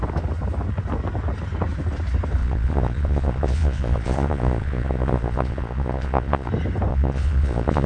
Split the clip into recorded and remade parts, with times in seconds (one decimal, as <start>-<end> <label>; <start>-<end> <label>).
0.0-2.4 recorded; 2.4-6.5 remade; 6.5-6.9 recorded; 6.9-7.9 remade